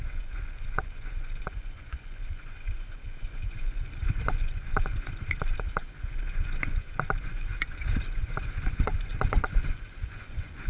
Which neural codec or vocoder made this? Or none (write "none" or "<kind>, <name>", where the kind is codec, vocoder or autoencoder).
vocoder, Vocos